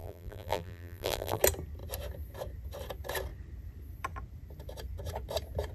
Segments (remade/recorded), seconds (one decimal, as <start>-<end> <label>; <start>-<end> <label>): 0.0-1.4 remade; 1.4-5.7 recorded